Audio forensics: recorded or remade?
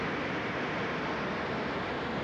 recorded